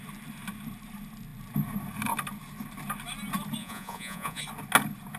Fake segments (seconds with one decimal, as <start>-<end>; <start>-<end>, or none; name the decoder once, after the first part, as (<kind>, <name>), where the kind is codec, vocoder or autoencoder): 3.6-4.4 (vocoder, Vocos)

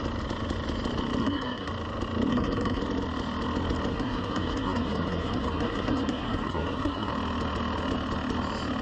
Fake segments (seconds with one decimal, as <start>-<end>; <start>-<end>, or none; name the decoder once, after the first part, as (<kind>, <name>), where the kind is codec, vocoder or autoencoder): 1.2-1.7 (codec, SNAC); 2.3-2.8; 3.9-7.1